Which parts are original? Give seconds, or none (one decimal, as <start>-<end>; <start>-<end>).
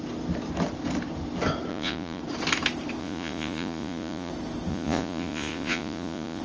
0.0-1.7; 2.2-3.0; 4.3-4.7